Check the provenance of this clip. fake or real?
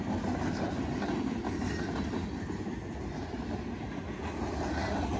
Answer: real